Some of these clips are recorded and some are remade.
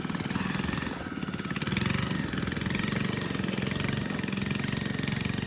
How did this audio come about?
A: recorded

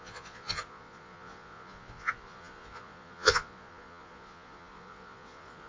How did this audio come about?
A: remade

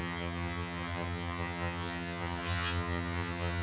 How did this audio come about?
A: remade